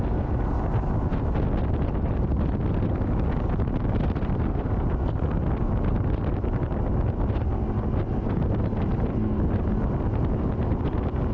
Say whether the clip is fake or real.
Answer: real